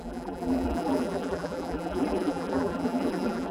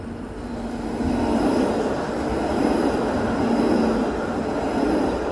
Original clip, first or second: second